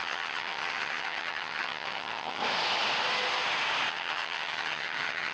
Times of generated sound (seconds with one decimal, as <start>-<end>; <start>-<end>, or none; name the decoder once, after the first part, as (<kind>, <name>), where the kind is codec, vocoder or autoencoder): 0.0-2.4 (vocoder, HiFi-GAN); 3.9-5.3